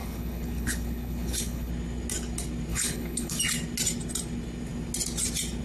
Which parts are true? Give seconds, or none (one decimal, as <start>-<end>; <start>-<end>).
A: 1.7-2.7; 3.4-5.6